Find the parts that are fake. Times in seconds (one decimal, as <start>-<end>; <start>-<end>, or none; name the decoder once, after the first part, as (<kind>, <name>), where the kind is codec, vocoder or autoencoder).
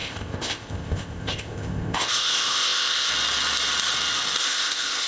0.0-3.1 (codec, ZipCodec); 4.4-5.1